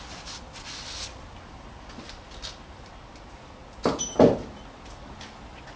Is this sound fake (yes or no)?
no